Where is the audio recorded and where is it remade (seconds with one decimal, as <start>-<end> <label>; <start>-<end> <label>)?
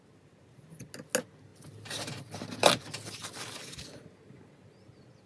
0.0-5.3 recorded